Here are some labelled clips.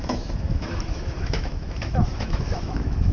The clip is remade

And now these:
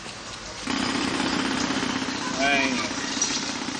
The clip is recorded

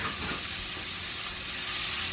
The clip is recorded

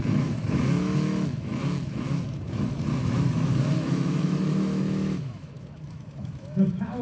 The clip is remade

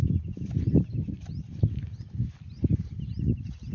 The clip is recorded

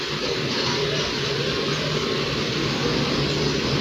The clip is recorded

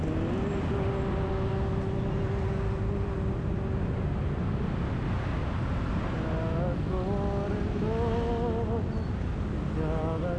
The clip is recorded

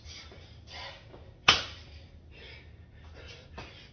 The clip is recorded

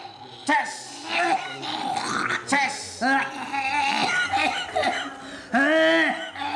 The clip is recorded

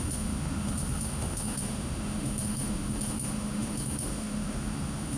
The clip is remade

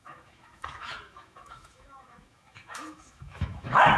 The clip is remade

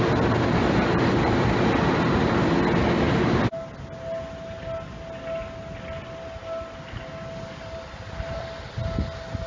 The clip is recorded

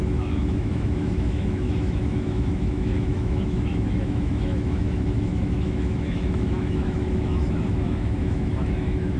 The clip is remade